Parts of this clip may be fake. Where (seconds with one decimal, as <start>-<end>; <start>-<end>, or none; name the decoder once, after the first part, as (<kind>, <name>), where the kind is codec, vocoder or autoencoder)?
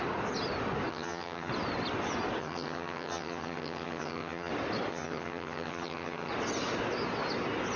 0.9-1.5 (vocoder, HiFi-GAN); 2.4-4.5; 4.9-6.3